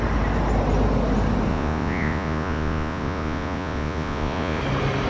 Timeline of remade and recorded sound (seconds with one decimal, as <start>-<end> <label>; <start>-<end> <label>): 0.0-1.5 recorded; 1.5-4.6 remade; 4.6-5.1 recorded